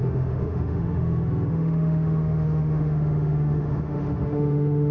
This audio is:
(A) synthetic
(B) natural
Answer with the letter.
A